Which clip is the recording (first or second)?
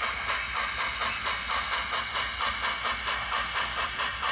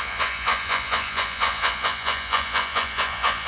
first